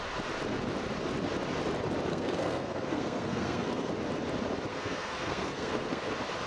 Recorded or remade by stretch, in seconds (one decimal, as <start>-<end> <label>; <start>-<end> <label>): 0.0-2.1 recorded; 2.1-3.9 remade; 3.9-4.7 recorded; 4.7-6.1 remade; 6.1-6.5 recorded